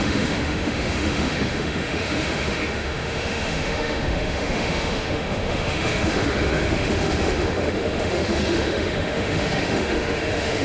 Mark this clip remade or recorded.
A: remade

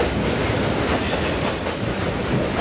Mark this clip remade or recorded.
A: recorded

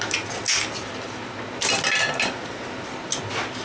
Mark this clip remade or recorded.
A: recorded